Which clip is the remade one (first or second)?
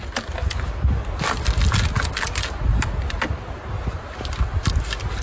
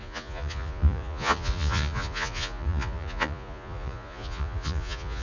second